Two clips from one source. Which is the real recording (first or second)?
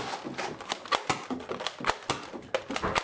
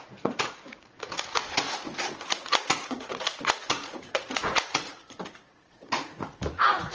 first